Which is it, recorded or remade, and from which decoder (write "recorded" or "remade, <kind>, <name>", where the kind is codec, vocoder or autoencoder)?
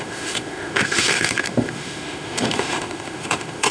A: remade, autoencoder, DAC-VAE